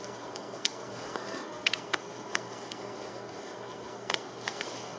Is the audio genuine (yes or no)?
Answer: no